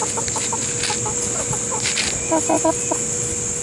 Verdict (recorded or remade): recorded